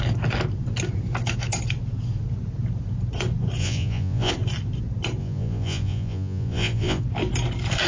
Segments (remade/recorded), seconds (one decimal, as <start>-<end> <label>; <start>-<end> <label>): 0.0-3.6 recorded; 3.6-4.3 remade; 4.3-5.2 recorded; 5.2-7.0 remade; 7.0-7.9 recorded